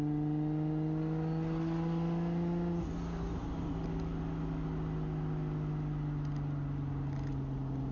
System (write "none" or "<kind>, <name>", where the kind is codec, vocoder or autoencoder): none